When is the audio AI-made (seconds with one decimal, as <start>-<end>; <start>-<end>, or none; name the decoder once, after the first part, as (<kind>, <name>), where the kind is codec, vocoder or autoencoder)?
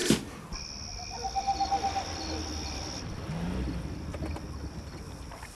none